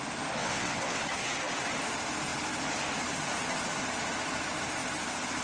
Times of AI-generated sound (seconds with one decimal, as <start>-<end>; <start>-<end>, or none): 0.4-1.0